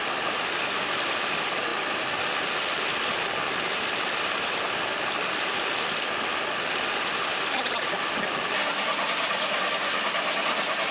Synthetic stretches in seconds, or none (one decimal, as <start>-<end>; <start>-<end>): none